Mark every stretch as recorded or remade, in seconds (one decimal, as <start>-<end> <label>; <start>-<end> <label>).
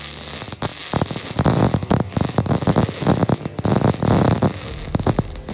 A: 0.0-5.5 recorded